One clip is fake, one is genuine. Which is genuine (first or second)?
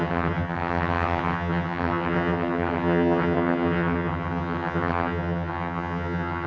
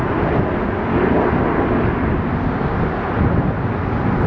second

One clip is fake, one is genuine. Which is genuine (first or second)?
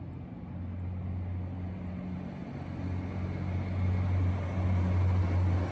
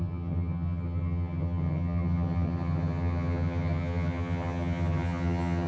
first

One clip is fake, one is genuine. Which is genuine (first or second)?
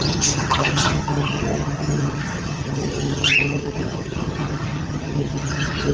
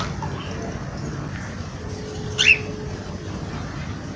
second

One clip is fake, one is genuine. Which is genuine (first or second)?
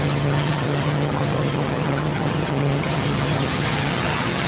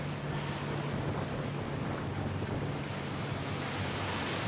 second